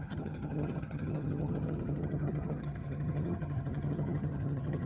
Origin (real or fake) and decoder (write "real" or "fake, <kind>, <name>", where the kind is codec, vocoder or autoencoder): fake, vocoder, HiFi-GAN